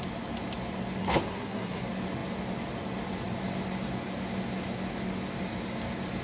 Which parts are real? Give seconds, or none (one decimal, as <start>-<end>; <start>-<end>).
0.0-1.0; 1.8-6.2